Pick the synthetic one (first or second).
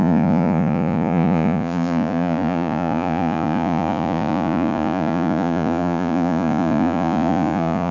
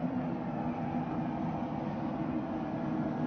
first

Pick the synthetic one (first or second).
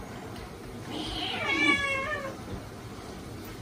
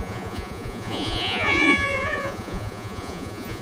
second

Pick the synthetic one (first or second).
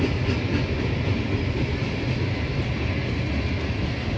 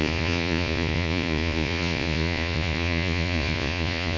second